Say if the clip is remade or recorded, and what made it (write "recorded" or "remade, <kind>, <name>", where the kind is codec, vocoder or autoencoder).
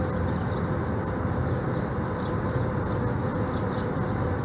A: recorded